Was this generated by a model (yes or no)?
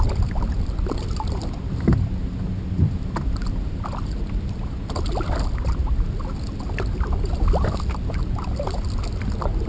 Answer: no